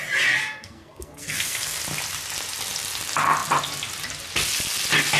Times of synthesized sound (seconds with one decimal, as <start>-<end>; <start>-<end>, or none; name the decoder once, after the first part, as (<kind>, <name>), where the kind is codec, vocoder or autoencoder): 0.4-1.8 (codec, SNAC)